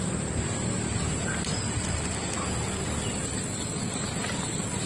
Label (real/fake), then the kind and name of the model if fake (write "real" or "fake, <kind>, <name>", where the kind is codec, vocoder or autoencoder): real